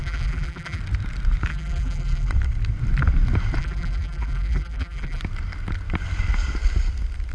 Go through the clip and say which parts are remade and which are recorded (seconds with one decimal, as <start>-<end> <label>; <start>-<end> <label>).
0.0-0.8 remade; 0.8-1.5 recorded; 1.5-2.3 remade; 2.3-3.6 recorded; 3.6-5.2 remade; 5.2-7.3 recorded